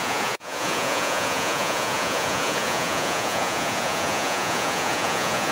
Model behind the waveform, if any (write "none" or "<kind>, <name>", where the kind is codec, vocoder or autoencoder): vocoder, Vocos